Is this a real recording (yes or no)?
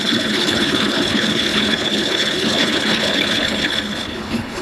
no